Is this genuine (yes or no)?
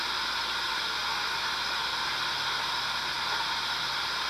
yes